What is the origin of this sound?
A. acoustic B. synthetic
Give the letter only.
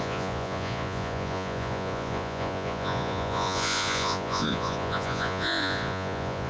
B